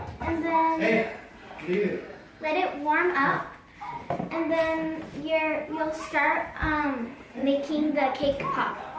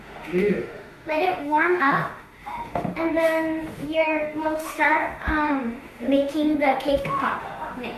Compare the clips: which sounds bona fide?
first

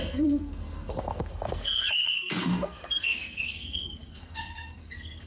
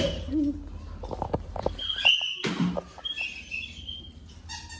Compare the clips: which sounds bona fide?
second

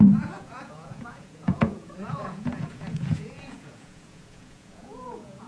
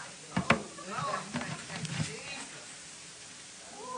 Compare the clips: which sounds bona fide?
second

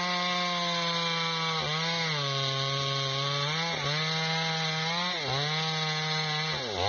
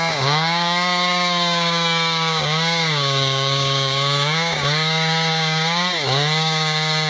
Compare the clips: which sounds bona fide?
first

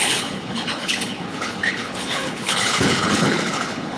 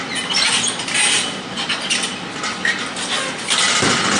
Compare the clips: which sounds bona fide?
second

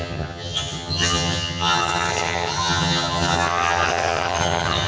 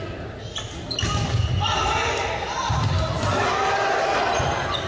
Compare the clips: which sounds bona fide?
second